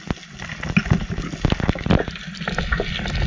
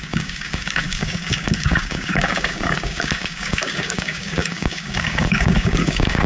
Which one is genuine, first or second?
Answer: first